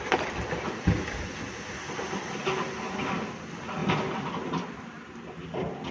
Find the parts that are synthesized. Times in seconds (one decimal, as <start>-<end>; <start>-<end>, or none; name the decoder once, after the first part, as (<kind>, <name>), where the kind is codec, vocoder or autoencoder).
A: none